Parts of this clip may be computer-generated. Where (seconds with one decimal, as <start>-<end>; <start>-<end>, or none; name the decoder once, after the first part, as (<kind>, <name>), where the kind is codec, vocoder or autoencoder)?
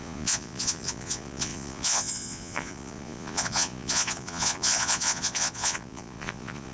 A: 0.0-6.7 (vocoder, Vocos)